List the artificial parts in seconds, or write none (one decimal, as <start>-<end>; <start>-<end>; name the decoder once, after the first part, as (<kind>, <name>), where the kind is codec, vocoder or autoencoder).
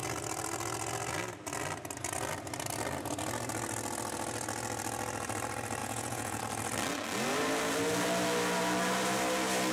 5.8-6.4 (vocoder, Vocos)